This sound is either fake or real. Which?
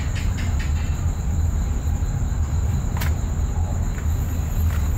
real